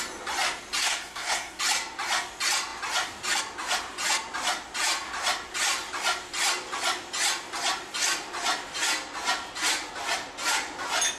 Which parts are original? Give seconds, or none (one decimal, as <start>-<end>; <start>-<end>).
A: 0.0-0.8; 1.6-11.2